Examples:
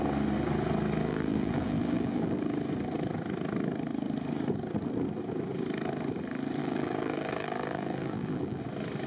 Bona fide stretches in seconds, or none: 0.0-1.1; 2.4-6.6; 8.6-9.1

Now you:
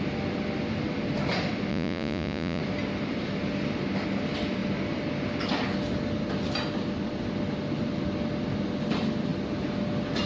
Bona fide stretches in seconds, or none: 0.0-1.7; 2.6-10.3

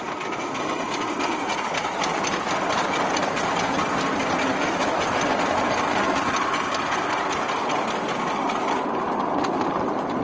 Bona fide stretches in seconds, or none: 0.0-4.5; 5.2-10.2

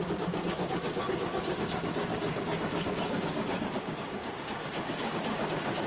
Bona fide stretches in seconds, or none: none

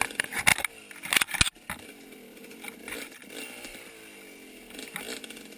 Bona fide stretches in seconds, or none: 0.0-5.6

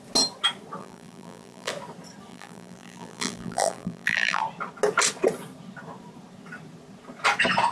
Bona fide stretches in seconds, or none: 0.0-0.8; 1.7-2.3; 4.4-7.7